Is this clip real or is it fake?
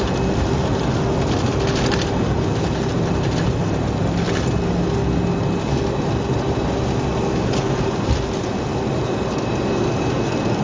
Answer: real